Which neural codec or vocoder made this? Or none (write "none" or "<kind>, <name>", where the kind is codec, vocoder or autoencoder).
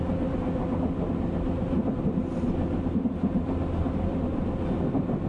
none